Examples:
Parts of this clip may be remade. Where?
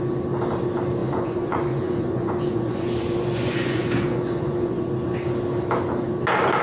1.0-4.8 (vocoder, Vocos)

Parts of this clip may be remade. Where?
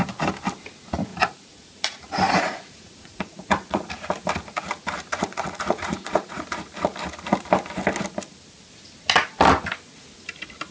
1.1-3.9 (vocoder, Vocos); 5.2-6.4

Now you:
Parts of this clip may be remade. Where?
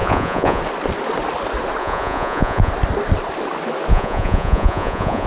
0.0-0.6 (vocoder, Vocos); 1.8-2.7; 3.9-5.3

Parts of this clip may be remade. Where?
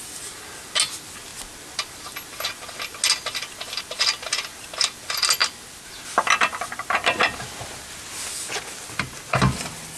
none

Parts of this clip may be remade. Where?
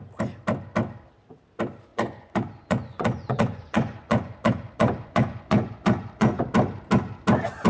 1.9-6.4 (vocoder, Vocos)